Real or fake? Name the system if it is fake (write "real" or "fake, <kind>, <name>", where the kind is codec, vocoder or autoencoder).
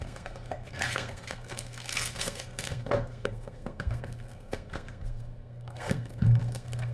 fake, codec, SNAC